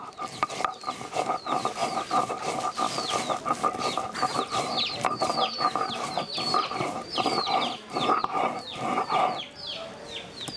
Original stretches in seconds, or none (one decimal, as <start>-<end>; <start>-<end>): 0.0-10.6